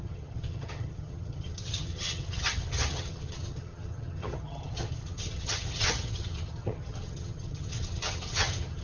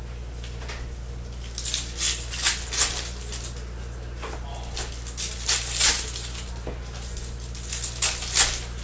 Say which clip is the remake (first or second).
first